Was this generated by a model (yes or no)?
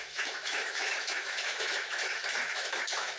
yes